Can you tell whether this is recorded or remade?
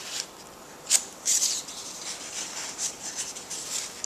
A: recorded